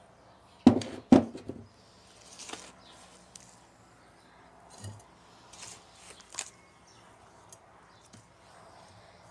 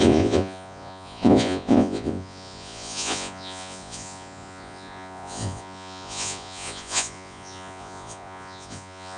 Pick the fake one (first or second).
second